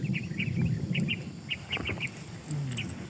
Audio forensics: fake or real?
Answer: real